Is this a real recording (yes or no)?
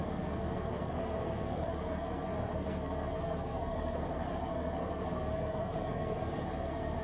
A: no